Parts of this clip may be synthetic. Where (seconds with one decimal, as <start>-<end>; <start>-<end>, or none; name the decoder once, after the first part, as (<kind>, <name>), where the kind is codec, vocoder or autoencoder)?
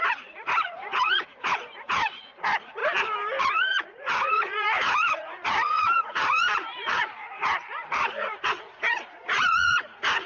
0.0-2.8 (vocoder, Vocos); 3.4-10.3